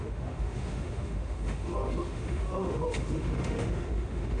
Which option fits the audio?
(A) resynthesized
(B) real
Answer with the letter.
A